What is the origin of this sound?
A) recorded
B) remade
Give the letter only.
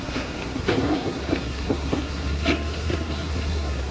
B